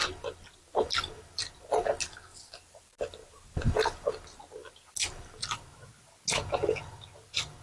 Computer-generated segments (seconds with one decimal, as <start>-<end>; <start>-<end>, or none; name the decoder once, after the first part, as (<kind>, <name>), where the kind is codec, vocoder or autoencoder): 0.0-0.9 (vocoder, BigVGAN v2); 2.3-4.1